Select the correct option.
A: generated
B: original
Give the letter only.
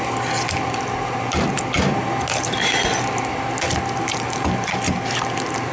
B